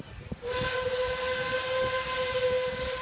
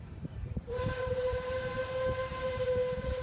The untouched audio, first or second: first